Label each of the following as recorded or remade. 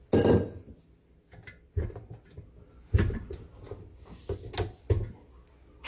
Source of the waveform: recorded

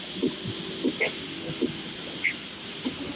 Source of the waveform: recorded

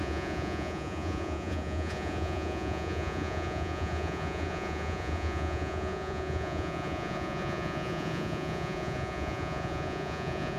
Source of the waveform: remade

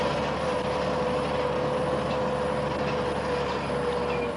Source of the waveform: recorded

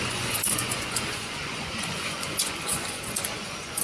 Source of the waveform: remade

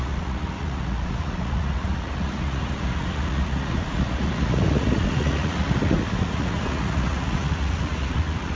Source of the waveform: remade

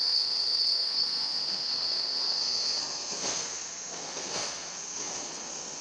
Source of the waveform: remade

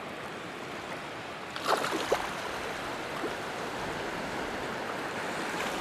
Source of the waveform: recorded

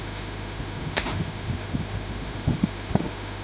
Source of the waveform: remade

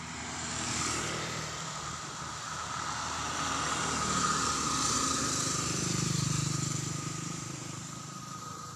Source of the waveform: remade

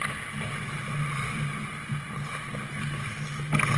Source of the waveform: recorded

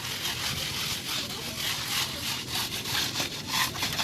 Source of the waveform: recorded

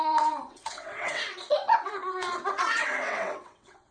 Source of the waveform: remade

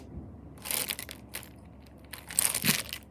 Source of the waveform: recorded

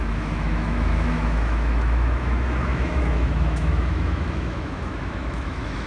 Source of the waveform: remade